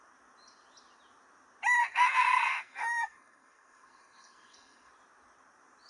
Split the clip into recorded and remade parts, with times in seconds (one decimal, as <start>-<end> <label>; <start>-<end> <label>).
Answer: 0.0-1.8 recorded; 1.8-4.9 remade; 4.9-5.9 recorded